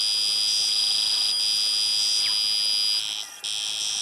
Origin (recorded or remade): recorded